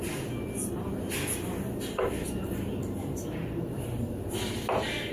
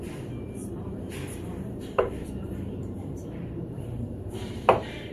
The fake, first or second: second